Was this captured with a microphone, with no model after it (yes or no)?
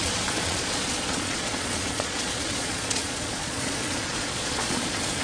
no